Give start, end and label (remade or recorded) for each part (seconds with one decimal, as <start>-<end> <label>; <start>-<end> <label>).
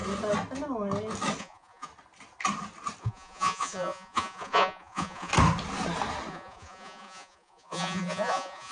0.0-1.4 recorded; 1.4-1.9 remade; 1.9-3.0 recorded; 3.0-5.3 remade; 5.3-6.3 recorded; 6.3-8.7 remade